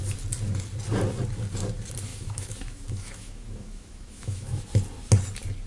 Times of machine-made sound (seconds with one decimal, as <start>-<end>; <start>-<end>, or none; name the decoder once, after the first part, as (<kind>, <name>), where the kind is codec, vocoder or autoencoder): 2.1-4.6 (autoencoder, DAC-VAE)